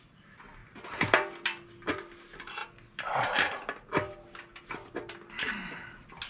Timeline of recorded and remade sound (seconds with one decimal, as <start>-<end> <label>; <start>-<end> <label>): 0.0-6.3 recorded